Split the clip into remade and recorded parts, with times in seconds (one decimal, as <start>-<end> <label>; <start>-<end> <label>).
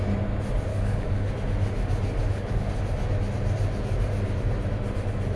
0.0-0.7 recorded; 0.7-1.3 remade; 1.3-2.2 recorded; 2.2-2.7 remade; 2.7-5.4 recorded